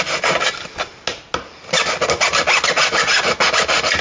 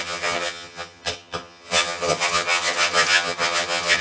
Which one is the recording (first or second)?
first